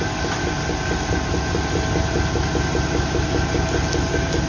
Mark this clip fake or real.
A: real